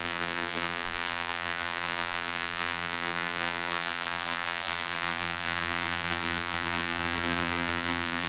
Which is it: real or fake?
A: fake